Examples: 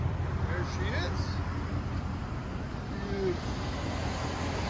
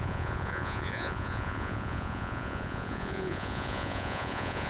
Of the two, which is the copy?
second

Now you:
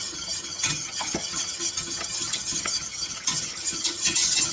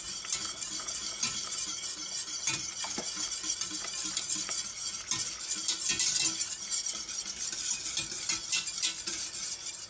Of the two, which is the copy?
first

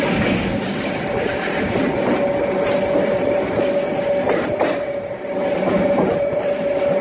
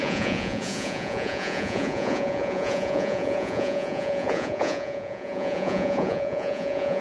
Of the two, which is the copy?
second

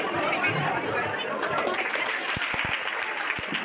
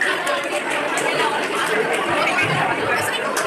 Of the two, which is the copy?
second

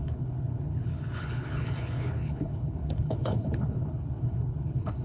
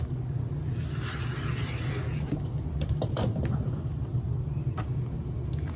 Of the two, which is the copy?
first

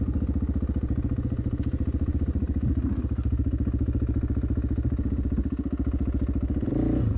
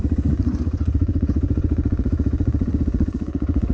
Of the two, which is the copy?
second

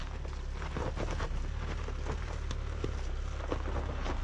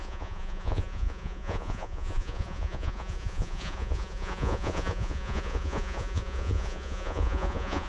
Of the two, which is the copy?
second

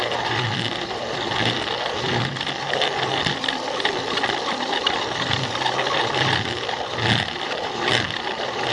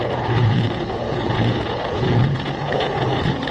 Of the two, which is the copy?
second